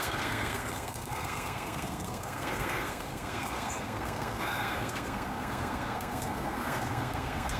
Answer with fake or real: fake